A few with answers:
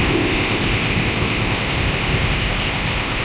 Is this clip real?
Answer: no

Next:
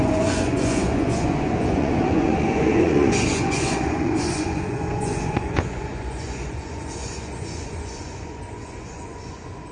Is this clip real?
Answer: no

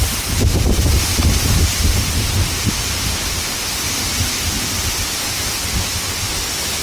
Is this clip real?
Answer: yes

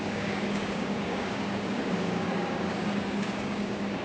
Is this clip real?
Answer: no